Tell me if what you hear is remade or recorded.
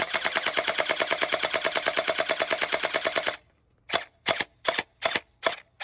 recorded